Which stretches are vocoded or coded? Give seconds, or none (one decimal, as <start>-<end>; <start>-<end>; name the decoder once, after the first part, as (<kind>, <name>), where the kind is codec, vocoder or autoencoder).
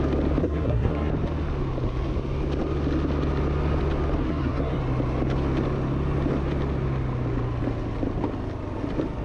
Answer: 0.4-1.1 (codec, SNAC); 4.2-4.8